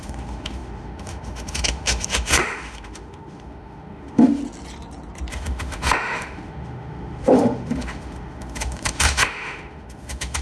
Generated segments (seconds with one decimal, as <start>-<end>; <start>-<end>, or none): 0.0-4.4; 5.3-10.4